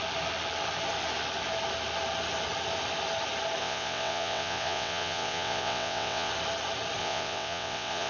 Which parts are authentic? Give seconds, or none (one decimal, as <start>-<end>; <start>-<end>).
0.0-3.6; 6.3-7.0